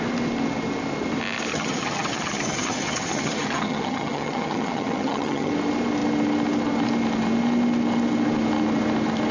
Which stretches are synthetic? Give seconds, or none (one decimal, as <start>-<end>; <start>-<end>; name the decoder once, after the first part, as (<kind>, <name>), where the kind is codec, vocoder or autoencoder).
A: 1.5-5.5 (vocoder, HiFi-GAN)

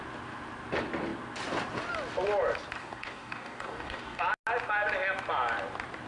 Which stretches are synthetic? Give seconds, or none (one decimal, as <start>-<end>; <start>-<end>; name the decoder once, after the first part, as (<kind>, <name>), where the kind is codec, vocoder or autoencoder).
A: 2.8-4.2 (codec, DAC)

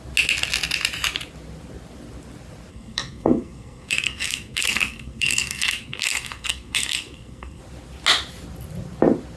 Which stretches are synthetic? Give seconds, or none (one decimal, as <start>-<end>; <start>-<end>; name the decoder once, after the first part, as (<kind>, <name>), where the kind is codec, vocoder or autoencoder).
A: 2.7-7.6 (codec, SNAC)

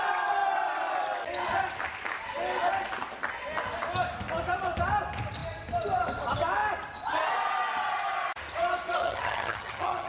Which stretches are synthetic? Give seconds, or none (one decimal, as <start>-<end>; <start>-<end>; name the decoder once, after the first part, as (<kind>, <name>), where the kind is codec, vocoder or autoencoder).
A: 9.0-10.1 (vocoder, HiFi-GAN)

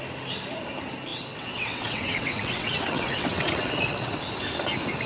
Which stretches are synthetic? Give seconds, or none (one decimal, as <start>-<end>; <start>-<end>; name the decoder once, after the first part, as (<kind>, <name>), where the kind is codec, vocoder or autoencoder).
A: 1.1-4.2 (vocoder, WaveNeXt)

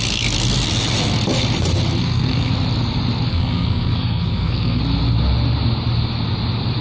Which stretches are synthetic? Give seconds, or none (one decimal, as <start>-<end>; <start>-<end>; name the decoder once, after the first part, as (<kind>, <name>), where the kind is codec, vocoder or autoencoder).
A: 2.0-2.5 (codec, SNAC); 3.3-4.8